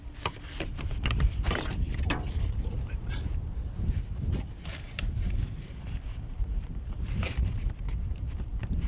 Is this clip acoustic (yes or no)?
no